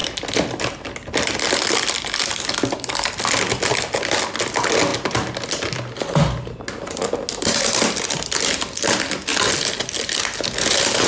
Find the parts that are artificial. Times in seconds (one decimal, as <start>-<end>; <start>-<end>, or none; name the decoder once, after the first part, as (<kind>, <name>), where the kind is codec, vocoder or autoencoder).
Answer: none